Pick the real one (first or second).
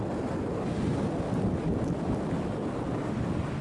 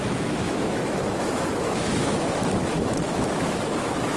first